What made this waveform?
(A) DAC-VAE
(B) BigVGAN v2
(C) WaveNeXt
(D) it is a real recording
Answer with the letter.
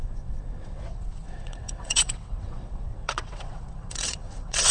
C